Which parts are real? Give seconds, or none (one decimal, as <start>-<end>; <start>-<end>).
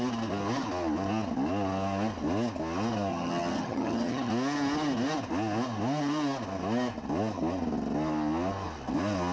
0.0-3.1; 4.3-9.3